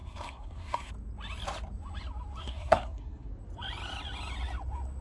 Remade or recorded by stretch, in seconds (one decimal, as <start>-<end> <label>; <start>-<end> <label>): 0.0-0.9 remade; 0.9-2.4 recorded; 2.4-3.3 remade; 3.3-5.0 recorded